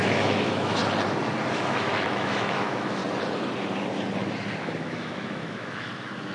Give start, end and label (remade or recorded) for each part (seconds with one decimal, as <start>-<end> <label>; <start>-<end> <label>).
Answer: 0.0-0.8 remade; 0.8-1.5 recorded; 1.5-3.0 remade; 3.0-4.6 recorded; 4.6-6.3 remade